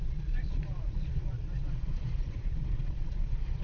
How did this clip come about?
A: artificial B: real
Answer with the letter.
A